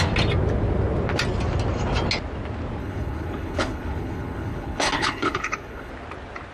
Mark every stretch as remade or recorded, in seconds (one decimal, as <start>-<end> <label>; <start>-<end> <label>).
0.0-2.8 recorded; 2.8-5.9 remade; 5.9-6.5 recorded